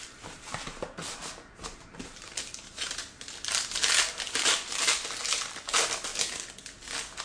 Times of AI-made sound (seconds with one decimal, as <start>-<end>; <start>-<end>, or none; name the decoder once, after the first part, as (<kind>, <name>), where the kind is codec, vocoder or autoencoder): 0.0-3.0 (vocoder, BigVGAN v2); 4.3-6.1